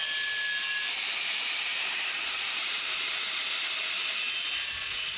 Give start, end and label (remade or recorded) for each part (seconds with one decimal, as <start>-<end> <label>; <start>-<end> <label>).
0.0-1.7 recorded; 1.7-3.3 remade; 3.3-5.2 recorded